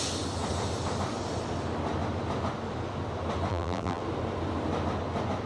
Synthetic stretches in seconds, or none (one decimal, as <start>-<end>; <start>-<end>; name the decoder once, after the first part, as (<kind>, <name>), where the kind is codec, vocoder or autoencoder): 3.5-4.0 (vocoder, BigVGAN v2)